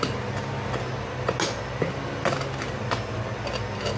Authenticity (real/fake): real